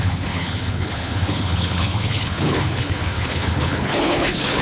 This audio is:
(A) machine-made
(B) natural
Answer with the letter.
A